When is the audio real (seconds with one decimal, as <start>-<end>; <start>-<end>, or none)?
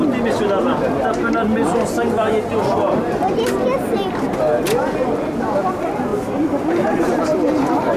0.0-6.1